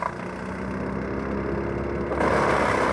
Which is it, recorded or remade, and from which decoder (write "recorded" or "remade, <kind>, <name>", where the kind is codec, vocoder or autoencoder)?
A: recorded